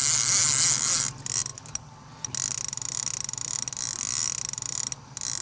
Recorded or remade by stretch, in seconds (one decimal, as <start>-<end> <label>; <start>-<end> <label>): 0.0-5.4 recorded